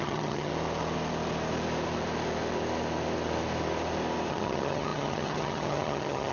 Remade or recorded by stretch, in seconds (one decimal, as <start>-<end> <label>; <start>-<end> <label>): 0.0-0.5 remade; 0.5-4.3 recorded; 4.3-6.3 remade